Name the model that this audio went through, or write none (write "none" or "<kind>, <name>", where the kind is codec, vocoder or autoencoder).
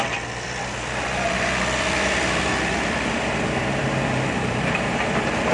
vocoder, BigVGAN v2